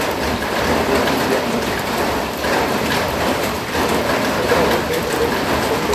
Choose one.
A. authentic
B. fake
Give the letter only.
B